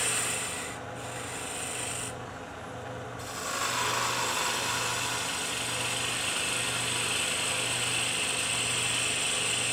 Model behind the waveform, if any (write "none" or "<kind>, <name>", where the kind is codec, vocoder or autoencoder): none